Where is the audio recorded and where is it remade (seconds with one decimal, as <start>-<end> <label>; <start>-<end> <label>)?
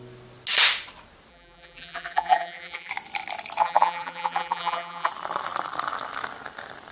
0.0-1.3 recorded; 1.3-2.9 remade; 2.9-3.6 recorded; 3.6-5.1 remade; 5.1-6.9 recorded